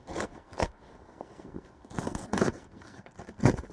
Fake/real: fake